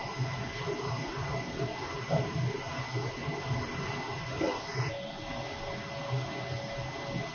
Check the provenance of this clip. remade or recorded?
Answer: recorded